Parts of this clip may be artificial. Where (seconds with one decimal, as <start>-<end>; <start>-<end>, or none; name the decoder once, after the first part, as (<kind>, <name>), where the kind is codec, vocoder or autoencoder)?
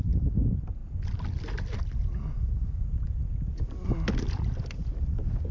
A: none